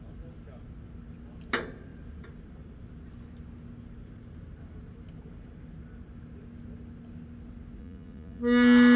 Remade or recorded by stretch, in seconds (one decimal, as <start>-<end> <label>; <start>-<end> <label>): 0.0-7.8 recorded; 7.8-8.4 remade; 8.4-9.0 recorded

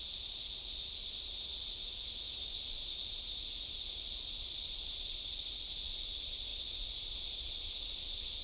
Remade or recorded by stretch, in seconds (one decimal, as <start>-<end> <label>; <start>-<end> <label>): 0.0-6.5 recorded; 6.5-7.0 remade; 7.0-8.4 recorded

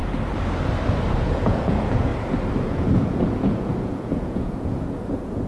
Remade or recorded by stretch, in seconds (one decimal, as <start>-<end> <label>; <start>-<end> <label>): 0.0-1.1 recorded; 1.1-2.1 remade; 2.1-2.6 recorded; 2.6-5.5 remade